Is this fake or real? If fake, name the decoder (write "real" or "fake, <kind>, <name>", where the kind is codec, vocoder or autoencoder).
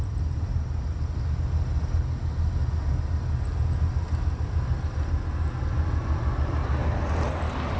real